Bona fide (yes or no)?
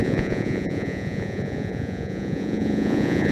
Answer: no